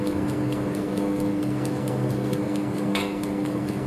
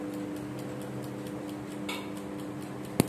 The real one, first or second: second